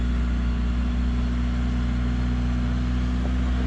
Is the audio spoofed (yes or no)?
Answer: no